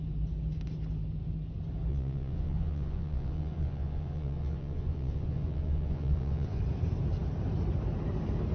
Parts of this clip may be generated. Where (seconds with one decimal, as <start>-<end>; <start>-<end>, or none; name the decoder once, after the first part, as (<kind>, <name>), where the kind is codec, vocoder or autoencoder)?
1.9-6.6 (vocoder, Vocos)